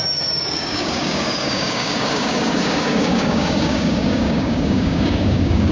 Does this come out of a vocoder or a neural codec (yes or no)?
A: yes